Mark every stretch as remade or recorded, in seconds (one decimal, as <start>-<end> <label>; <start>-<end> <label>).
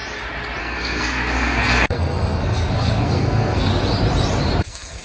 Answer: 0.0-0.6 recorded; 0.6-3.7 remade; 3.7-4.6 recorded; 4.6-5.0 remade